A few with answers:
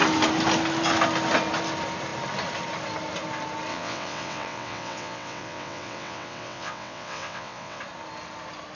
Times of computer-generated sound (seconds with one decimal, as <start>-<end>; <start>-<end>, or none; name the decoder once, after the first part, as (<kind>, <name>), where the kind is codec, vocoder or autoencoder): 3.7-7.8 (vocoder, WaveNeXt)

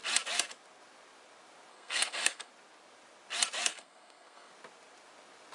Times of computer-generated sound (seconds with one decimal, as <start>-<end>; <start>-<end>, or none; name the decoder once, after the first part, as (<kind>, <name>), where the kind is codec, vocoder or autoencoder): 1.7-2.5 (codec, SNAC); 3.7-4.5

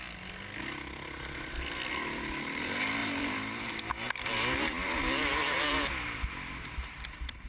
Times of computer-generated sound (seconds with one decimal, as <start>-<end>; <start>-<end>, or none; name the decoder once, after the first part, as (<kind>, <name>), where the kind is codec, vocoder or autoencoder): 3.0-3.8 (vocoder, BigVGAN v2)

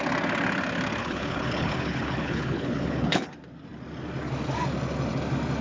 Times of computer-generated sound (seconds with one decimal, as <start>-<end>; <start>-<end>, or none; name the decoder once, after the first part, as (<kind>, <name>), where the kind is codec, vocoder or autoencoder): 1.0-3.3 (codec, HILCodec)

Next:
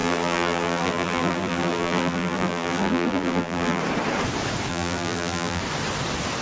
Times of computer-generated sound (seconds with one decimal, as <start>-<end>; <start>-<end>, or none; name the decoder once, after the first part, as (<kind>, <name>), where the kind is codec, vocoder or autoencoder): 0.0-3.8 (vocoder, BigVGAN v2); 4.7-5.6

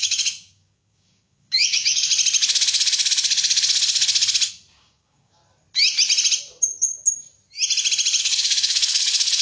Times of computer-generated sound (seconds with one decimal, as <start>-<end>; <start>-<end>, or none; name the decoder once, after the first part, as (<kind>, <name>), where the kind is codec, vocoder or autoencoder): 0.0-2.1 (codec, DAC); 4.8-5.4; 8.2-9.4